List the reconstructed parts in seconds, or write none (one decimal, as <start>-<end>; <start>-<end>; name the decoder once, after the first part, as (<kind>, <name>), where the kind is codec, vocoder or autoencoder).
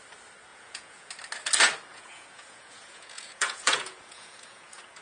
0.5-1.1 (vocoder, Vocos); 1.9-5.0